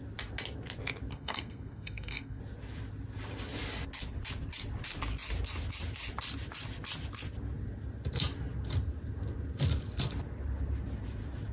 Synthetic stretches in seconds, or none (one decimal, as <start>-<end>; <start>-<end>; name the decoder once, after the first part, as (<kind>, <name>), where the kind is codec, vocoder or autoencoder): 1.1-2.4 (codec, SNAC)